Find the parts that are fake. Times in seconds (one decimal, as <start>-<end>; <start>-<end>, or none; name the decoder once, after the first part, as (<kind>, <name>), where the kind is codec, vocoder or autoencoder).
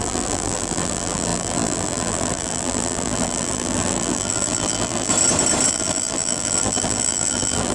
0.0-5.1 (vocoder, BigVGAN v2); 5.7-7.7